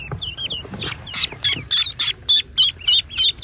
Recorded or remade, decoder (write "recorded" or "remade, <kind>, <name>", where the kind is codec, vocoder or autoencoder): recorded